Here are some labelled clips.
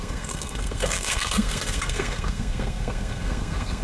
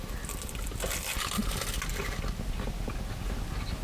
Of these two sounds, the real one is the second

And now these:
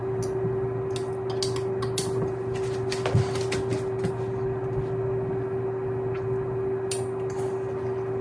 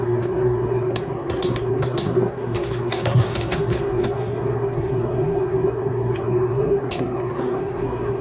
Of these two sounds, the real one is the first